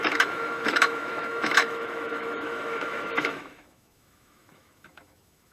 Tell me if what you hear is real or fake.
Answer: fake